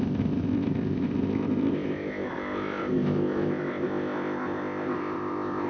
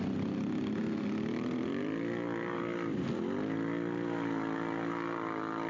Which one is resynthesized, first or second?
first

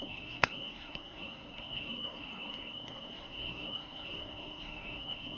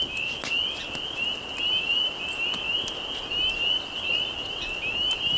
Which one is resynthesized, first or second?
first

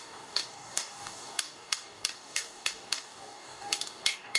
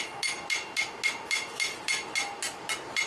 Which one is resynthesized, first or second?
first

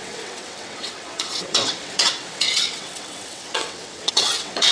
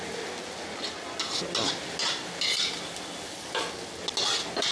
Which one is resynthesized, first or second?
first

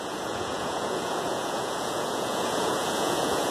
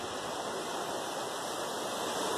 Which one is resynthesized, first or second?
first